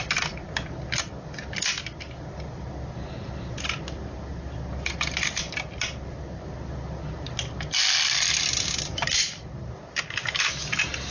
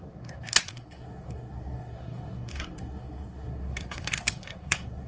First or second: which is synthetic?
second